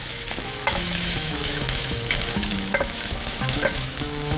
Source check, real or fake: fake